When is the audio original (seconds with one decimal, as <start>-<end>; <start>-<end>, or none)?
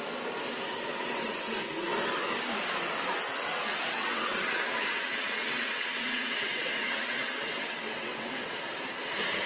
0.0-0.9; 1.5-3.7; 8.5-9.5